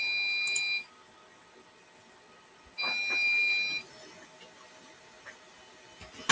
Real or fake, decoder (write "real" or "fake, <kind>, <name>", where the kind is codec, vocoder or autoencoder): real